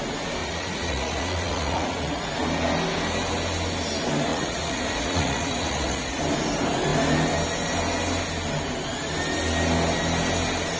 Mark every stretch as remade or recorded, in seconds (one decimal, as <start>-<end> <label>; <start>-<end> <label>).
0.0-0.4 recorded; 0.4-2.3 remade; 2.3-4.3 recorded; 4.3-6.2 remade; 6.2-10.8 recorded